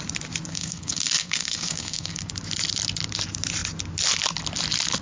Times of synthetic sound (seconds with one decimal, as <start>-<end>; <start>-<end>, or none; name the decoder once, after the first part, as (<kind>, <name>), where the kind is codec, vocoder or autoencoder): 0.5-2.3 (codec, SNAC)